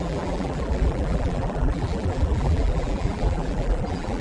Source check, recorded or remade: remade